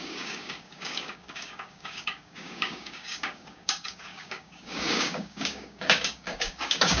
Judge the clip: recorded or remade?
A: remade